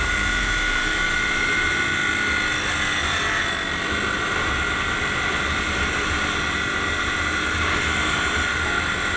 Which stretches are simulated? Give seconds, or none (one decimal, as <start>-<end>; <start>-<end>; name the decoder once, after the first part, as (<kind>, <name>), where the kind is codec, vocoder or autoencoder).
0.0-2.0 (vocoder, BigVGAN v2); 4.2-9.2